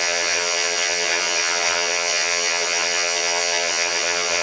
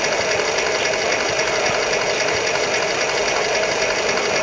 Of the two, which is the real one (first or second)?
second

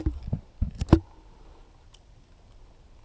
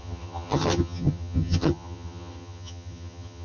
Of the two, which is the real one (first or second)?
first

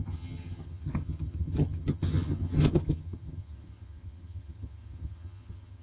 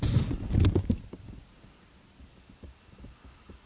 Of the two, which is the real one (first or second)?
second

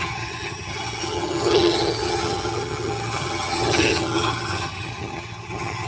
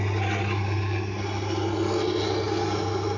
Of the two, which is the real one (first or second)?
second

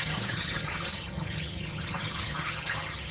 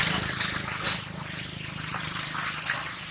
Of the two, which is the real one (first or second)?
second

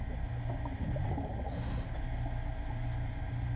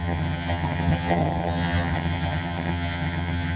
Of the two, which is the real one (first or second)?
first